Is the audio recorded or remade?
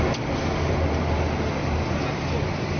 recorded